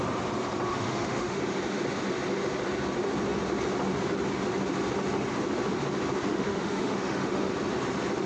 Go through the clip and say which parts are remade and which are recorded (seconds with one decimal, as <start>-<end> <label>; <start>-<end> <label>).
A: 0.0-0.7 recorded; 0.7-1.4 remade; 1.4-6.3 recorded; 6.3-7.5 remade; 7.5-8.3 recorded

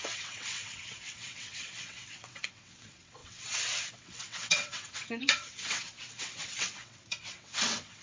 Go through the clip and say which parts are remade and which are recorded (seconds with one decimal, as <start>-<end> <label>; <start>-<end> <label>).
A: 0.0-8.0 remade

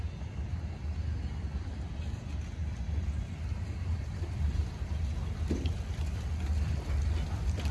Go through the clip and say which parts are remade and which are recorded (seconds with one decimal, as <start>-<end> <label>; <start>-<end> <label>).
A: 0.0-7.7 recorded

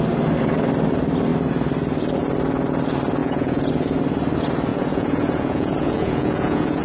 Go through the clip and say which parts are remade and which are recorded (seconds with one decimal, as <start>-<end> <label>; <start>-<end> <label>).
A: 0.0-3.2 recorded; 3.2-3.7 remade; 3.7-4.7 recorded; 4.7-6.8 remade

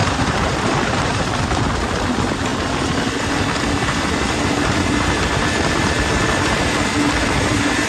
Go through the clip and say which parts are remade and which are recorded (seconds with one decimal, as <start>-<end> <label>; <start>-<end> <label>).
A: 0.0-1.2 remade; 1.2-7.9 recorded